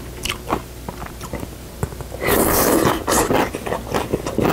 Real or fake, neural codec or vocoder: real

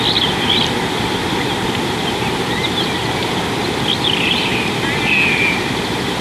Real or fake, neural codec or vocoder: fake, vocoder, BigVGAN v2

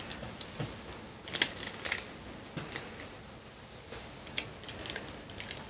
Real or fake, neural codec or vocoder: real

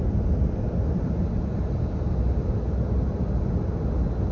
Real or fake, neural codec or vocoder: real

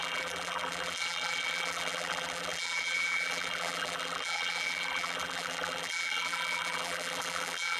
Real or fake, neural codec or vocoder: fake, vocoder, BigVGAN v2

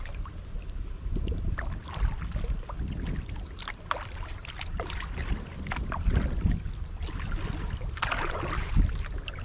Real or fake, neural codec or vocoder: real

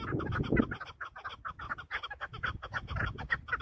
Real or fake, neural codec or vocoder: real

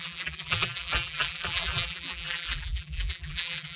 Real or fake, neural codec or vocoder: fake, vocoder, BigVGAN v2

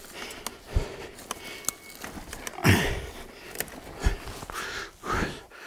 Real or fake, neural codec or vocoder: real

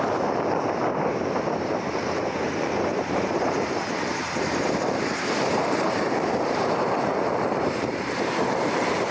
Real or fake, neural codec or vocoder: fake, vocoder, BigVGAN v2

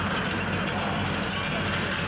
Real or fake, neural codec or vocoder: real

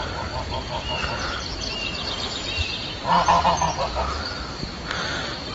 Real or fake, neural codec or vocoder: real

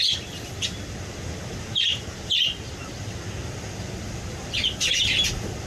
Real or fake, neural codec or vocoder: real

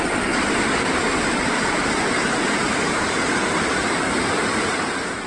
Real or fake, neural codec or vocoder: fake, vocoder, BigVGAN v2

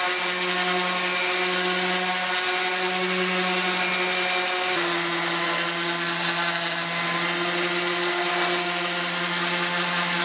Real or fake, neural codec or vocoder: real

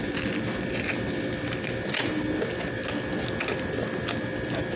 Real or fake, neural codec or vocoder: real